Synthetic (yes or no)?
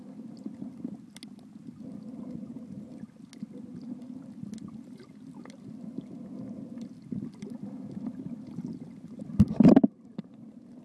no